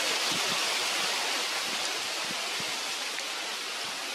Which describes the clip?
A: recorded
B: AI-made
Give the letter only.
A